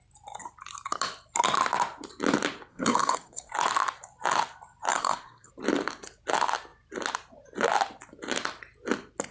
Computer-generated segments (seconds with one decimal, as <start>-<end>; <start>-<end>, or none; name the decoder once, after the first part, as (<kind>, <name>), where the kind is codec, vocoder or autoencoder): 2.7-3.5 (codec, SNAC); 4.9-5.5